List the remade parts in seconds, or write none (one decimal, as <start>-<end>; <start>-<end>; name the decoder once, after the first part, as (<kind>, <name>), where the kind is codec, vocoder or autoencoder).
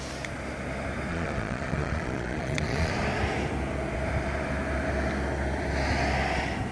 1.1-2.9 (vocoder, Vocos)